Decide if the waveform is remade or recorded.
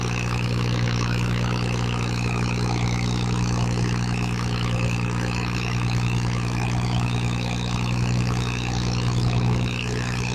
remade